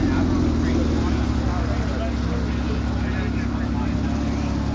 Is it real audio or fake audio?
real